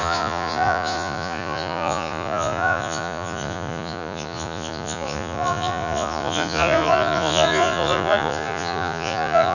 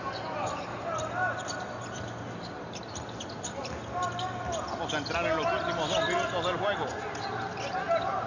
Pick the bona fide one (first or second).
second